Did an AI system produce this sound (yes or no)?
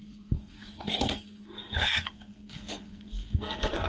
yes